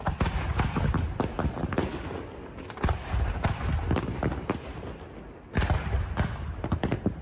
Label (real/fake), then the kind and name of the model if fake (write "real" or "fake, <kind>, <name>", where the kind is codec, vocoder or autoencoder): real